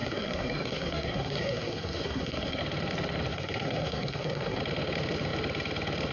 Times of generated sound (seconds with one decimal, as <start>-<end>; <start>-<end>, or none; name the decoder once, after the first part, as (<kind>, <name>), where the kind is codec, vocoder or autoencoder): 0.0-2.6 (codec, SNAC); 3.3-4.6